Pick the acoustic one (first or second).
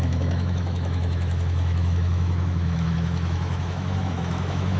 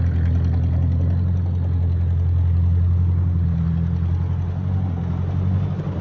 second